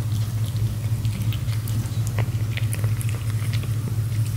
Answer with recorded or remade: recorded